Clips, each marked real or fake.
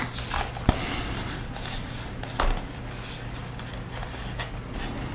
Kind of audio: real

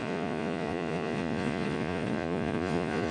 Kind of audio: fake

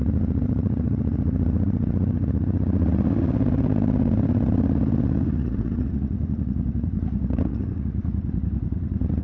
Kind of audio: fake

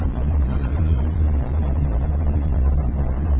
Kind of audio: fake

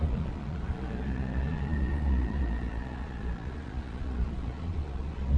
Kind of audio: fake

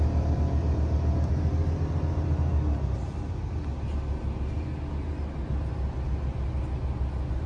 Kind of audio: real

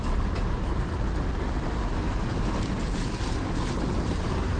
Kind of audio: real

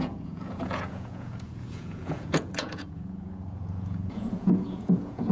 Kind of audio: fake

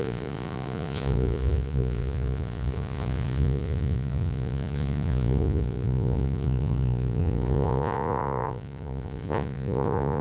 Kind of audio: fake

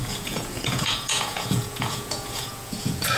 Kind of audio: fake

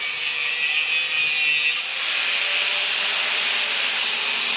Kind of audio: real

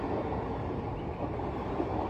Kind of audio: real